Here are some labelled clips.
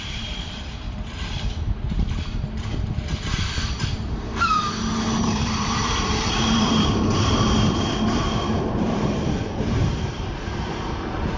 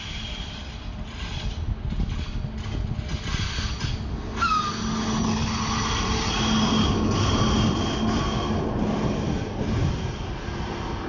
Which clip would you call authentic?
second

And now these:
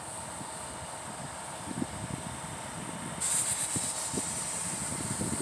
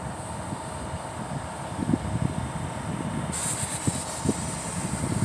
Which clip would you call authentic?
second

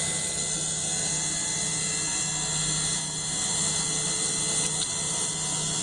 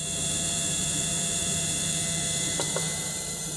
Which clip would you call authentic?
first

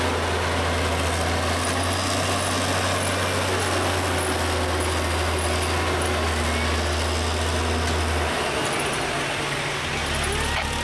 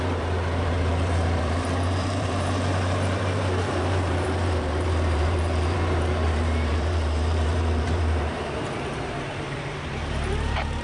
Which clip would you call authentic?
first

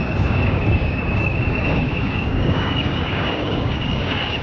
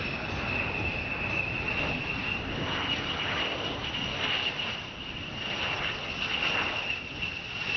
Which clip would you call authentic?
second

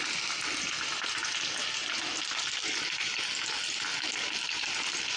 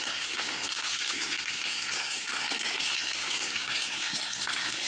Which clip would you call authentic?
first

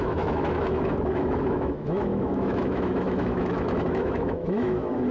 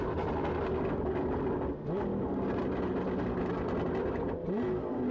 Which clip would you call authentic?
second